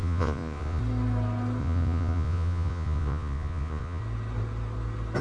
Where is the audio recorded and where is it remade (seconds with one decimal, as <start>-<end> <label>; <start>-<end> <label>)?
0.0-0.8 remade; 0.8-1.6 recorded; 1.6-4.0 remade; 4.0-5.2 recorded